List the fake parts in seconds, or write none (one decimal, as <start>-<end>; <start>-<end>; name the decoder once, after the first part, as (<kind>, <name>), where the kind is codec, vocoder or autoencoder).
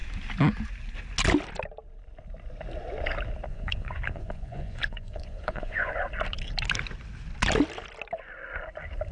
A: 3.5-5.9 (vocoder, Vocos)